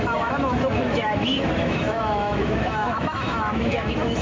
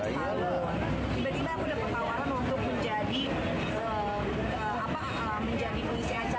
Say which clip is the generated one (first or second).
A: first